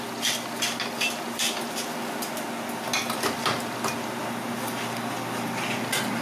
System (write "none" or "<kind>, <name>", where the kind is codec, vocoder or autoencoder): none